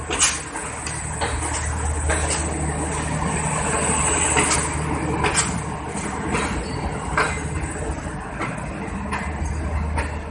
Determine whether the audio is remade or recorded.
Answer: recorded